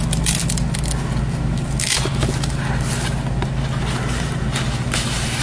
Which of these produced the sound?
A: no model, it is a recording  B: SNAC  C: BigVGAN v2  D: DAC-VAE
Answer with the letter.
A